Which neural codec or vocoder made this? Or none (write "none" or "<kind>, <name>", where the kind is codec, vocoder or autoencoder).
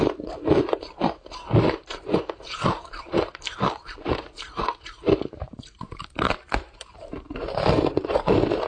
vocoder, BigVGAN v2